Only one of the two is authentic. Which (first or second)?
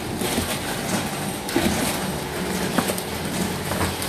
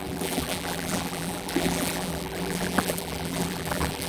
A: first